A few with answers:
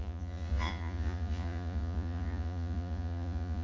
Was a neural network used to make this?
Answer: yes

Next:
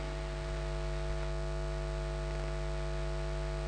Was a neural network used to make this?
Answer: no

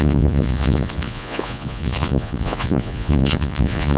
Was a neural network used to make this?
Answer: yes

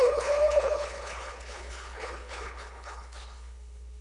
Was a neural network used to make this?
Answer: yes